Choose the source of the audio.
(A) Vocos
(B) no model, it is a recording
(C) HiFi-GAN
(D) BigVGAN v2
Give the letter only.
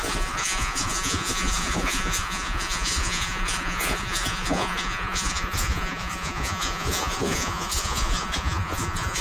A